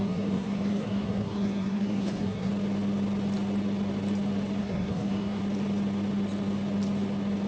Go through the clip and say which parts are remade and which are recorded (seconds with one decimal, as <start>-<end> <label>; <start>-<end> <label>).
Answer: 0.0-2.5 remade; 2.5-4.6 recorded; 4.6-5.4 remade; 5.4-7.5 recorded